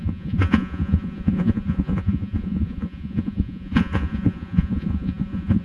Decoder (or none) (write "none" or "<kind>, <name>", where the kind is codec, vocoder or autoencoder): vocoder, Vocos